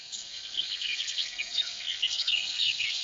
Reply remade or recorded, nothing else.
remade